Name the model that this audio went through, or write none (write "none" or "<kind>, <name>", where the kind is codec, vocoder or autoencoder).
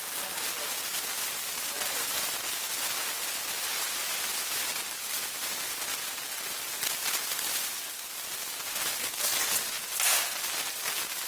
none